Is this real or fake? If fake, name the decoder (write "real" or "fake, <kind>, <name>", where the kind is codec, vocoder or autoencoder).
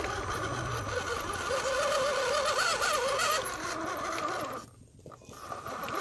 real